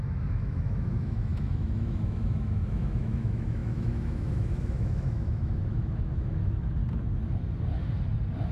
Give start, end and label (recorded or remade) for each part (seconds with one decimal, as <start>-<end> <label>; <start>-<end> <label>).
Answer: 0.0-6.8 remade; 6.8-8.5 recorded